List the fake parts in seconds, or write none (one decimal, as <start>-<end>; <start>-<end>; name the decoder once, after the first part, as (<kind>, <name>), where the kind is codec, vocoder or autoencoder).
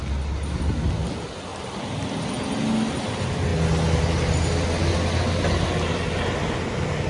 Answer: none